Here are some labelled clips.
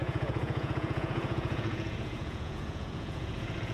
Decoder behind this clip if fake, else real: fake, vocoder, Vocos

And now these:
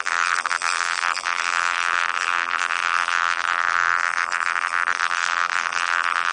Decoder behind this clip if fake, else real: fake, vocoder, BigVGAN v2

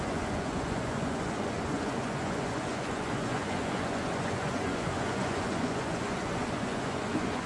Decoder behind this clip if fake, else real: fake, vocoder, Vocos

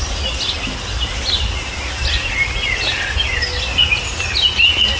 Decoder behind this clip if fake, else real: real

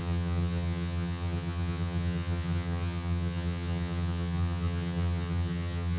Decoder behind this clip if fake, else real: fake, vocoder, HiFi-GAN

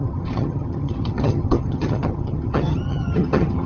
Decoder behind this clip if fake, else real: fake, vocoder, HiFi-GAN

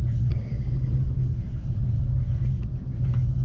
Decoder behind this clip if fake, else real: real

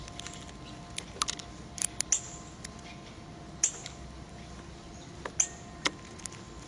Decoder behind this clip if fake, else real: real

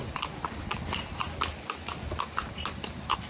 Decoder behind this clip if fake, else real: real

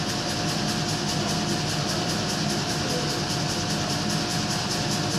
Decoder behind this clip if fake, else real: real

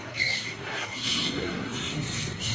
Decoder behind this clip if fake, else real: fake, codec, SNAC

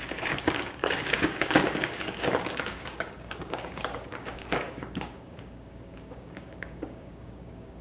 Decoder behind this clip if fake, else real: fake, codec, DAC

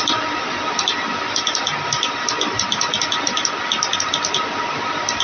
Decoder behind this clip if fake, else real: real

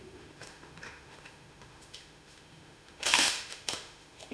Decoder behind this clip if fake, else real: fake, autoencoder, DAC-VAE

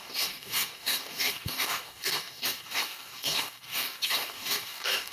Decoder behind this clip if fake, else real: fake, codec, DAC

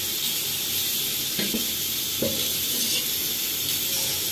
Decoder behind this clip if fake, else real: real